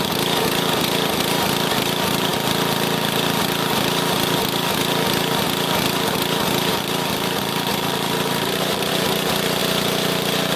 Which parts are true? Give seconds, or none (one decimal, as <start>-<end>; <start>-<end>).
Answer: 0.0-6.7; 8.9-10.6